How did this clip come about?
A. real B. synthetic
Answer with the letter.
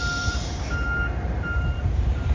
B